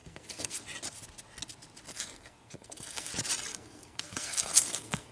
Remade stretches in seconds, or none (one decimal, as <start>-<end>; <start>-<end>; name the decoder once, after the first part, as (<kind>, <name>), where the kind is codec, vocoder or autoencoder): 0.0-0.6 (codec, SNAC); 1.9-3.1; 3.5-5.1